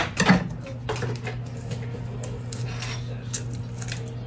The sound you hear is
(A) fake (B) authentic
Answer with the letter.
B